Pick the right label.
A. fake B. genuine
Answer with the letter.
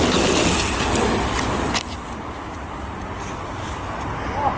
B